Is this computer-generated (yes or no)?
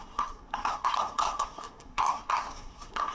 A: yes